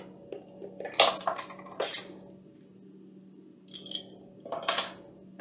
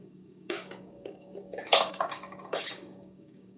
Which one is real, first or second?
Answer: first